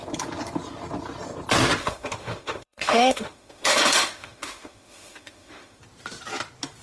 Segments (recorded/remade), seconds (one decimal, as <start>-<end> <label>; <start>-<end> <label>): 0.0-1.8 recorded; 1.8-5.8 remade; 5.8-6.8 recorded

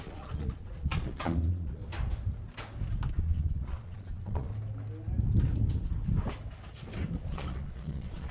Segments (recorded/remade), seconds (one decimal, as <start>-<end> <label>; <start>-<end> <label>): 0.0-1.8 remade; 1.8-3.1 recorded; 3.1-4.5 remade; 4.5-7.3 recorded; 7.3-8.3 remade

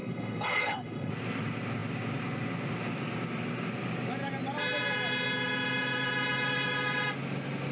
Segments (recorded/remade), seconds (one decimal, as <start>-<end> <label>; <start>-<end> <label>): 0.0-1.1 remade; 1.1-7.7 recorded

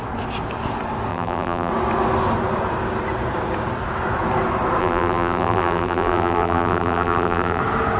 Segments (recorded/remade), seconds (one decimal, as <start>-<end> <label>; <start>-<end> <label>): 0.0-1.1 recorded; 1.1-1.7 remade; 1.7-4.8 recorded; 4.8-7.6 remade; 7.6-8.0 recorded

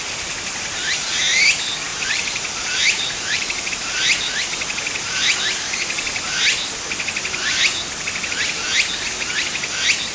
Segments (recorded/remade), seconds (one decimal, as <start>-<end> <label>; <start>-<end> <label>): 0.0-1.9 recorded; 1.9-3.7 remade; 3.7-10.1 recorded

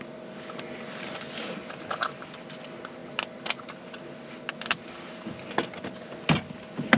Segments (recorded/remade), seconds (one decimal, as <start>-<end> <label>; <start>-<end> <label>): 0.0-7.0 recorded

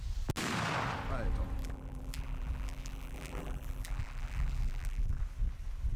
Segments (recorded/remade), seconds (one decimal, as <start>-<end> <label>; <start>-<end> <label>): 0.0-1.6 recorded; 1.6-5.2 remade; 5.2-6.0 recorded

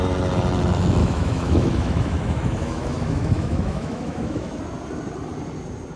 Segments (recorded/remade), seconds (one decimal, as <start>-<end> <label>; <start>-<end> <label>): 0.0-1.0 recorded; 1.0-4.6 remade; 4.6-6.0 recorded